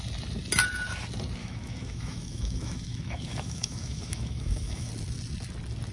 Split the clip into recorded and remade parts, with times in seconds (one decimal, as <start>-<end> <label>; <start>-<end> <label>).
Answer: 0.0-1.4 recorded; 1.4-4.9 remade; 4.9-5.9 recorded